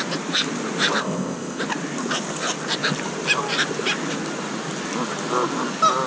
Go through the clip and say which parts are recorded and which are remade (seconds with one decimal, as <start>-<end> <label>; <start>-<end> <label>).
0.0-1.0 recorded; 1.0-1.6 remade; 1.6-6.1 recorded